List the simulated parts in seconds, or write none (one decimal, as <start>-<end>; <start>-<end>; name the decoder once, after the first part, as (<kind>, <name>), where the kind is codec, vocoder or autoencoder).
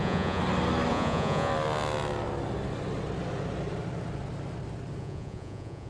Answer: 0.0-0.4 (vocoder, Vocos); 0.9-1.5; 5.0-5.9